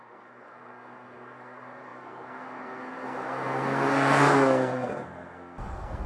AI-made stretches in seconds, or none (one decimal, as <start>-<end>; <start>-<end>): 0.0-6.1